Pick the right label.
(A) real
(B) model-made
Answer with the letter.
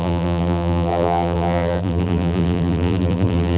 B